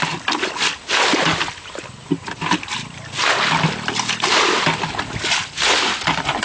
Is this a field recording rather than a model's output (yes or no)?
no